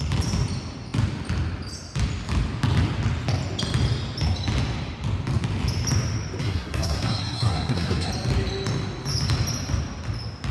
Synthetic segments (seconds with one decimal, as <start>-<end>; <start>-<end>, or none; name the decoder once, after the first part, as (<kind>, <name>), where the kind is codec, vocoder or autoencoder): 6.4-8.1 (codec, SNAC)